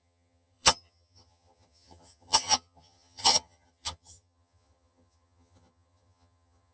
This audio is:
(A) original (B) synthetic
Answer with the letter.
B